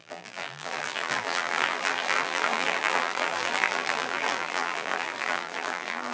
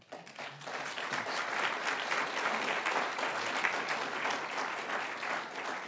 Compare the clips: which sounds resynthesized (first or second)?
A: first